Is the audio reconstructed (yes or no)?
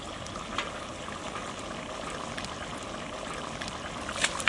no